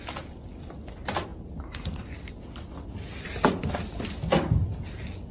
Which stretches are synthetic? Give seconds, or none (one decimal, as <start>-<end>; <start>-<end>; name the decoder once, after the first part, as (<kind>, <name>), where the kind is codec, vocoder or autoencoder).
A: none